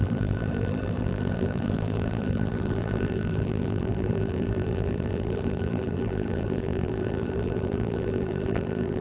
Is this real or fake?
fake